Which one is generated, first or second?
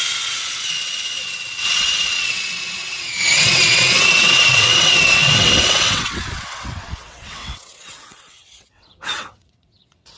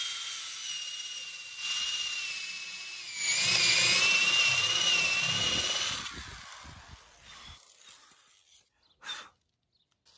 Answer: first